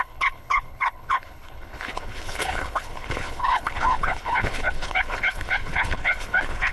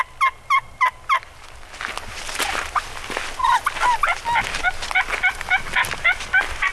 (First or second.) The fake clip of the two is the first